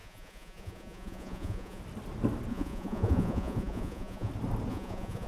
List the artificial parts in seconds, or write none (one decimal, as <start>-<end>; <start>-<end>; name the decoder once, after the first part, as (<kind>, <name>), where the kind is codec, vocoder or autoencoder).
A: 0.0-1.8 (vocoder, Vocos); 2.5-4.3; 4.7-5.3